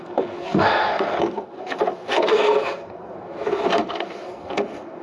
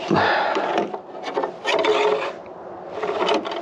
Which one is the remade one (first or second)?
first